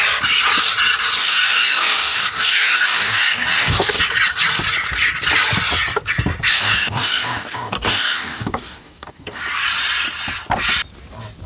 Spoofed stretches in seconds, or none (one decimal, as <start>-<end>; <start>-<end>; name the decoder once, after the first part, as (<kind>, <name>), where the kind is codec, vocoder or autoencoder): 1.2-4.0 (codec, DAC); 6.5-9.4